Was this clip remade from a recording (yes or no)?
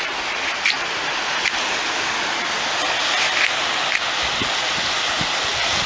no